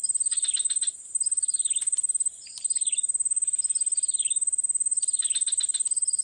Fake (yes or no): no